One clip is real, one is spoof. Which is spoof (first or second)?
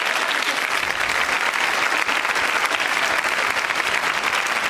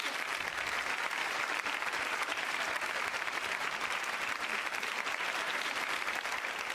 second